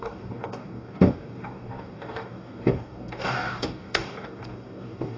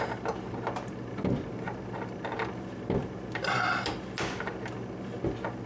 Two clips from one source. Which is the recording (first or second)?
second